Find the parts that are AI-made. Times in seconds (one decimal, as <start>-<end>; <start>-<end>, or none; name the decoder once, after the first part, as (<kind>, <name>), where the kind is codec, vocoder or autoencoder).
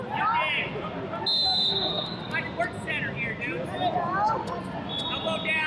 1.3-2.2 (codec, DAC)